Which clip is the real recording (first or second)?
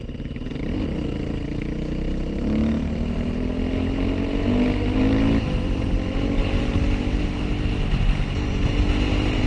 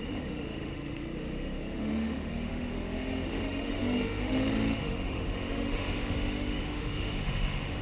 first